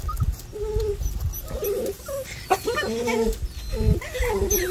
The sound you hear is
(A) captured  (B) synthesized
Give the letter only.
A